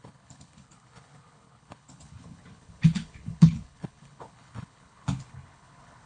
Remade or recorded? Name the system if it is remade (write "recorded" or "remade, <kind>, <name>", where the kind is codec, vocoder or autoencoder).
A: remade, codec, HILCodec